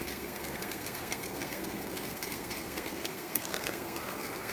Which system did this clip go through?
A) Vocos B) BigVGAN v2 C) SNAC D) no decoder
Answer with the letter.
C